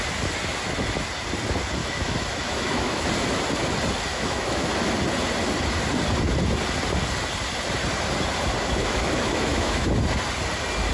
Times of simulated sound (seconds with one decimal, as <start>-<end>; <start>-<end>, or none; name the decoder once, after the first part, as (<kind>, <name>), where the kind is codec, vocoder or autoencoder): 1.8-3.1 (autoencoder, DAC-VAE); 4.1-4.7; 8.8-9.9